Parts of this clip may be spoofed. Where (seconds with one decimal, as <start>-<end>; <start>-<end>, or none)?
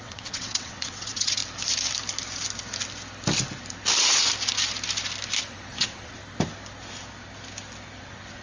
0.0-1.4; 5.4-6.2; 8.0-8.4